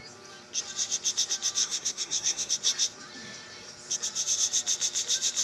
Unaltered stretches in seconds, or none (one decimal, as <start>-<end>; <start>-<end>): 0.0-1.6; 2.5-5.4